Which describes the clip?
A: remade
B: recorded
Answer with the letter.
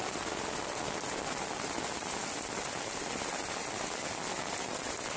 B